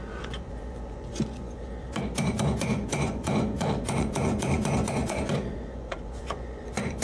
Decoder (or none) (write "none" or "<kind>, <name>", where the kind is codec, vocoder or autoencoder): vocoder, Vocos